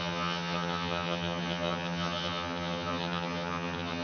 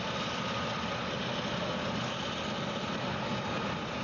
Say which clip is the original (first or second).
second